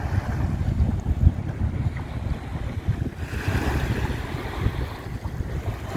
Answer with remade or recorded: recorded